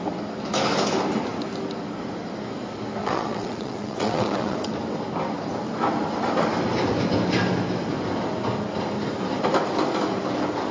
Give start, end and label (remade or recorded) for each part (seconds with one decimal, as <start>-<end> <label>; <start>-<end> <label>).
0.0-3.0 recorded; 3.0-4.7 remade; 4.7-10.7 recorded